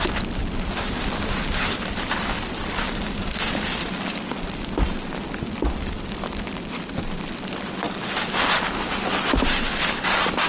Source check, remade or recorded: recorded